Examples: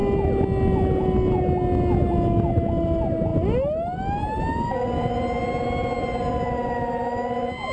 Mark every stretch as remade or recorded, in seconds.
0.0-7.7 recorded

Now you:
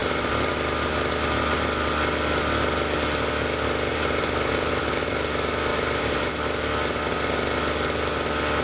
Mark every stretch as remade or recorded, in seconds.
0.0-0.5 remade; 0.5-3.9 recorded; 3.9-5.1 remade; 5.1-5.7 recorded; 5.7-6.3 remade; 6.3-8.6 recorded

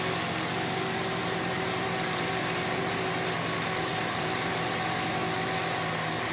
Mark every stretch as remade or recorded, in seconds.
0.0-1.2 recorded; 1.2-3.0 remade; 3.0-3.9 recorded; 3.9-4.7 remade; 4.7-6.3 recorded

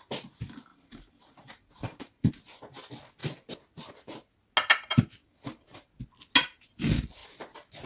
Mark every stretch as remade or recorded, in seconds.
0.0-0.7 recorded; 0.7-2.3 remade; 2.3-5.2 recorded; 5.2-5.9 remade; 5.9-7.9 recorded